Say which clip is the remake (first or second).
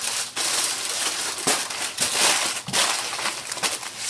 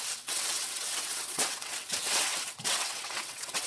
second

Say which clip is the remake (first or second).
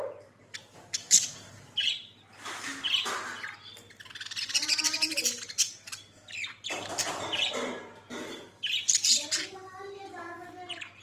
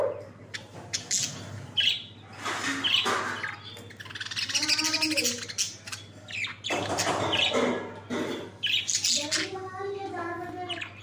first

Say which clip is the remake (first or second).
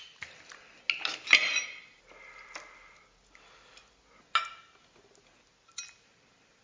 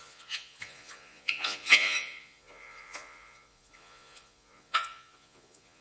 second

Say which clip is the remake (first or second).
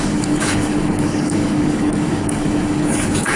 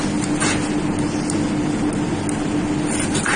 first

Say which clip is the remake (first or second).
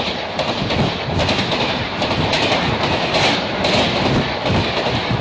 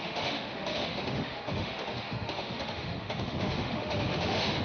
second